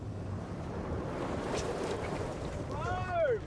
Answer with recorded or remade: remade